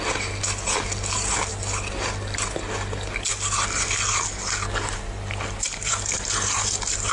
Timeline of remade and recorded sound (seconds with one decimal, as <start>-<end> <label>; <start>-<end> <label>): 0.0-7.1 recorded